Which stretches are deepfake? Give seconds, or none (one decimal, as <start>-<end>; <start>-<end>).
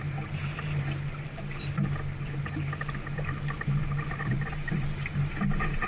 none